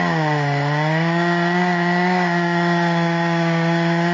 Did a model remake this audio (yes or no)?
yes